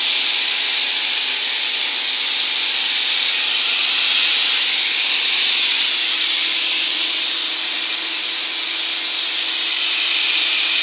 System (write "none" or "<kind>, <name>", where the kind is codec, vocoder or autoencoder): none